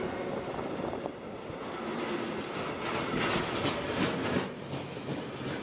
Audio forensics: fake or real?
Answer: real